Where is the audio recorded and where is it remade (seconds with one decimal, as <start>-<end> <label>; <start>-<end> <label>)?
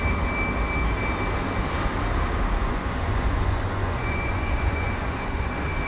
0.0-2.6 recorded; 2.6-5.5 remade; 5.5-5.9 recorded